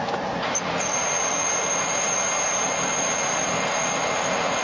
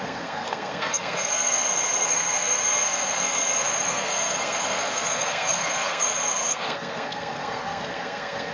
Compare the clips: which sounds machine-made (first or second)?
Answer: second